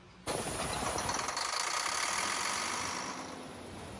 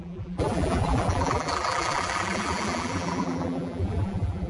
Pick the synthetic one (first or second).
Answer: second